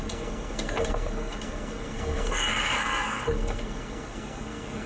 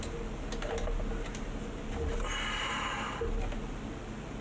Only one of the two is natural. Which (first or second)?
second